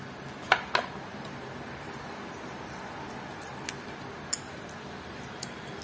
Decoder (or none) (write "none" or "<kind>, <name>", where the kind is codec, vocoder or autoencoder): none